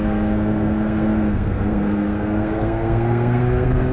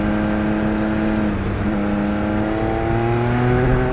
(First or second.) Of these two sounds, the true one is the second